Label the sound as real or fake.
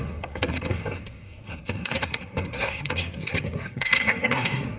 fake